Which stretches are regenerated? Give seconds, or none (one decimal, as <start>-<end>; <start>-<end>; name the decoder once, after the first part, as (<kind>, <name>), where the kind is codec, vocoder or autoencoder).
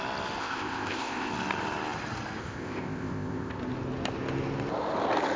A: 0.4-1.3 (codec, ZipCodec); 2.4-3.6